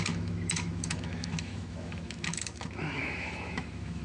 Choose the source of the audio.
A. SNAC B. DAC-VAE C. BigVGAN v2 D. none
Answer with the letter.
B